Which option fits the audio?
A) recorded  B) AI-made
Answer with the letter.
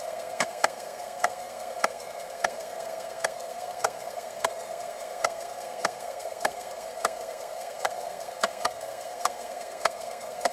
B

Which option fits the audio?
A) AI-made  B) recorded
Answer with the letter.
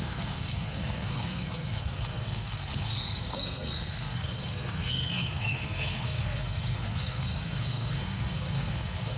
A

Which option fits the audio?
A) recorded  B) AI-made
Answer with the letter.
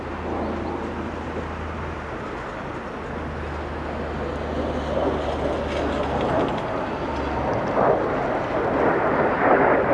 A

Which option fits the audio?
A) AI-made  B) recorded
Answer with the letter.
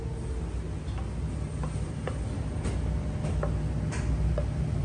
B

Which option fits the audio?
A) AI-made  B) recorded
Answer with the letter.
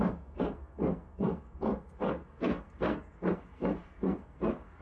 A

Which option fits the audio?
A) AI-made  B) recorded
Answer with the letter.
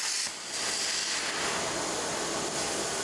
B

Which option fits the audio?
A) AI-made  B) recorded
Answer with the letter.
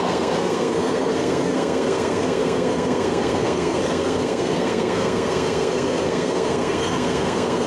A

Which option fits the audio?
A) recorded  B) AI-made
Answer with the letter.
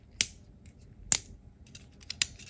A